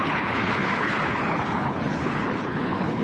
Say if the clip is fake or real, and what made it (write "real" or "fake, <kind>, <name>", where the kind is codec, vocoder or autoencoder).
fake, codec, HILCodec